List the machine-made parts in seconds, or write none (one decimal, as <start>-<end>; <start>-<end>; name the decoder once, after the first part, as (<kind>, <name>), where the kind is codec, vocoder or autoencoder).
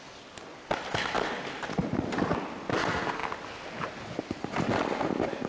0.0-1.8 (vocoder, BigVGAN v2); 2.6-3.2; 4.2-5.5